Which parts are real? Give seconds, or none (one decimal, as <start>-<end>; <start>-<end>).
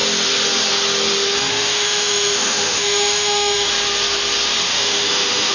0.0-1.5; 3.7-4.7